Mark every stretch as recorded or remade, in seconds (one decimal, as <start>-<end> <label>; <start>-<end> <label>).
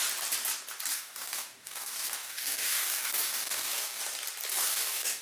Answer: 0.0-0.9 recorded; 0.9-4.0 remade; 4.0-4.5 recorded; 4.5-5.2 remade